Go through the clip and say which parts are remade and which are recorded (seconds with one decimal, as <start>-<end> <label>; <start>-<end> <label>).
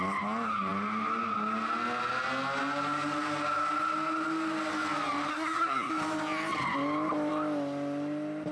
0.0-5.3 recorded; 5.3-5.9 remade; 5.9-8.5 recorded